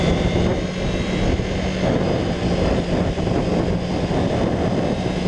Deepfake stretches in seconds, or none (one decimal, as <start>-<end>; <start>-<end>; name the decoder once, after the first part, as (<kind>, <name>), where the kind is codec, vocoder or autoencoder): none

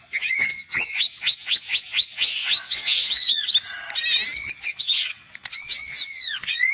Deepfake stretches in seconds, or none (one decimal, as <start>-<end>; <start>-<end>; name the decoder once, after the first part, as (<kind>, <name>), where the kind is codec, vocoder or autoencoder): 0.0-3.5 (vocoder, Vocos); 4.5-6.7

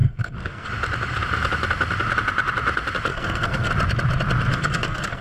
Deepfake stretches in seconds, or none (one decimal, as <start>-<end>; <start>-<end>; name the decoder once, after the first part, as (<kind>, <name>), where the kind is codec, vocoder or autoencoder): 0.0-0.7 (codec, SNAC); 3.1-3.7; 4.5-5.2

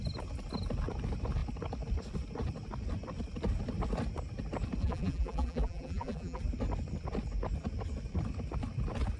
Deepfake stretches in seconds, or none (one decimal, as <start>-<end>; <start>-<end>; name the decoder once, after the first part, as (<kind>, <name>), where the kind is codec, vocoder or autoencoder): 4.8-6.4 (vocoder, BigVGAN v2)

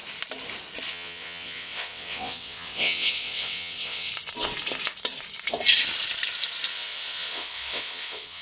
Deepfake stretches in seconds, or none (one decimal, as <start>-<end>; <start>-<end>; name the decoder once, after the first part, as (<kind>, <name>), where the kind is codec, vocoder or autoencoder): 0.9-4.1 (vocoder, WaveNeXt); 6.7-8.4

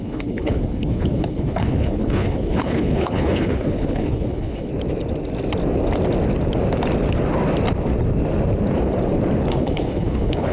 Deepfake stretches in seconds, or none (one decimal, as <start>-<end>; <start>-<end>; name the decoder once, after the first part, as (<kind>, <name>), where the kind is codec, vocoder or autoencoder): 0.0-4.7 (codec, HILCodec); 9.5-10.5

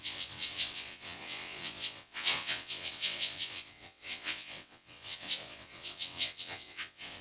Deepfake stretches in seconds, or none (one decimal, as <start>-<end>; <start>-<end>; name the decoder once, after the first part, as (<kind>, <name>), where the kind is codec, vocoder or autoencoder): 0.0-7.2 (vocoder, WaveNeXt)

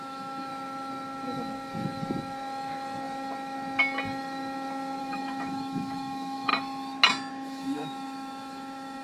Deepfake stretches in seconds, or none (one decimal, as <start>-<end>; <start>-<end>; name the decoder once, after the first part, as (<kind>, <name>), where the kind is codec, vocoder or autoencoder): 0.0-0.5 (autoencoder, DAC-VAE); 5.0-6.5; 7.3-9.0